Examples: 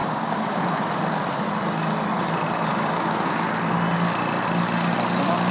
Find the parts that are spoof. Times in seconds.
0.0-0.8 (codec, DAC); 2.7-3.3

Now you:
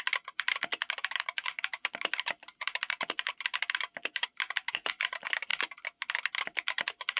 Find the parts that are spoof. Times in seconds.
0.7-4.9 (vocoder, BigVGAN v2)

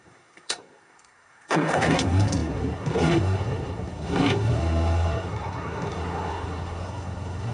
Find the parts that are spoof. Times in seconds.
0.0-7.5 (codec, SNAC)

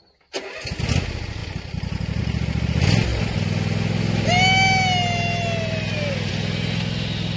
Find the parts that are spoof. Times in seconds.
none

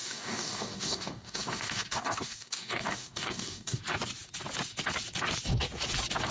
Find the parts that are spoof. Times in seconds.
0.0-3.8 (codec, DAC)